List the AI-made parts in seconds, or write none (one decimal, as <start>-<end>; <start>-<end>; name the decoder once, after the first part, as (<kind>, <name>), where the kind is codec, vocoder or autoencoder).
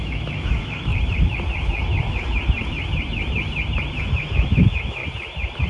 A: 0.0-0.9 (autoencoder, DAC-VAE); 4.3-5.0